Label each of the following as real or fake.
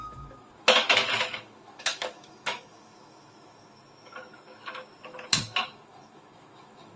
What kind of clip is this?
fake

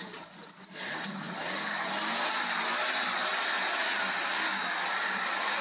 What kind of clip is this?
real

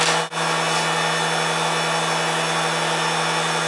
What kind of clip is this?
real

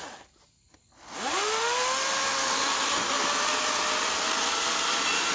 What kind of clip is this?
real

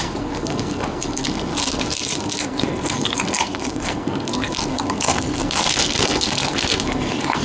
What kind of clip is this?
fake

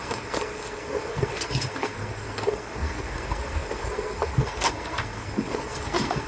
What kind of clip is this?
fake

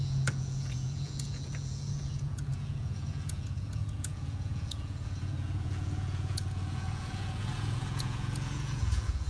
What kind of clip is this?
fake